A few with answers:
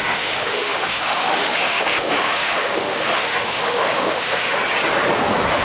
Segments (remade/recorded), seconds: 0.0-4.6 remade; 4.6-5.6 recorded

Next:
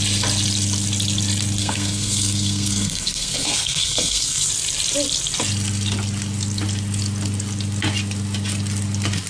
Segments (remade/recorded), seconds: 0.0-1.6 recorded; 1.6-4.5 remade; 4.5-9.3 recorded

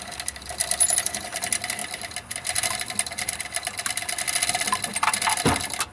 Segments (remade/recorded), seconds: 0.0-5.9 recorded

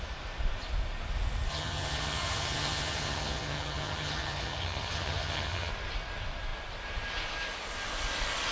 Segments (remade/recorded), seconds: 0.0-1.5 recorded; 1.5-5.7 remade; 5.7-8.5 recorded